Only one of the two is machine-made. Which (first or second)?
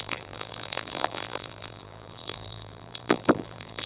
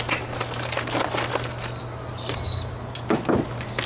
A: first